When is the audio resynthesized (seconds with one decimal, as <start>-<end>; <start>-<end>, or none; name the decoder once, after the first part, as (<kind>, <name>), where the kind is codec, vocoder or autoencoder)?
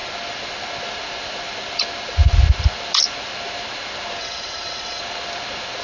4.2-5.0 (vocoder, WaveNeXt)